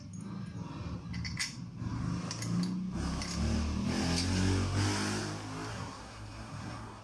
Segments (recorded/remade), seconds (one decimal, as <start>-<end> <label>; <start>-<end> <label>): 0.0-5.7 recorded; 5.7-7.0 remade